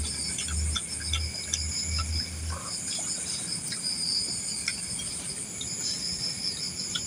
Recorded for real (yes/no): yes